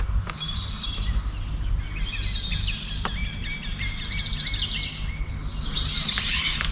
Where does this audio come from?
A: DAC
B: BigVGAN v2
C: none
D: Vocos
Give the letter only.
C